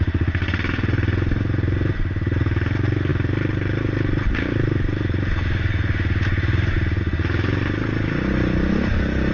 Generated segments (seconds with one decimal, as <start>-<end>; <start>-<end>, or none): none